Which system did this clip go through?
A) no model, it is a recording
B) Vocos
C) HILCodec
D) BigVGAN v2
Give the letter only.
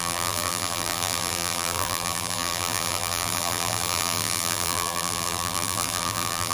D